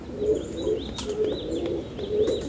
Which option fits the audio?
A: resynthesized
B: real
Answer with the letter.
B